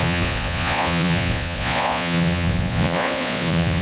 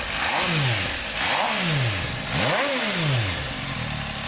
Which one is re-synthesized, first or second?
first